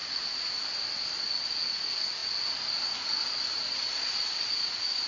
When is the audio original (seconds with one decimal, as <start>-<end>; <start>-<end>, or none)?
0.0-5.1